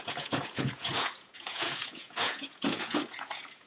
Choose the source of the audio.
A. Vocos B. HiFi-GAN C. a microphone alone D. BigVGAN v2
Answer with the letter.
A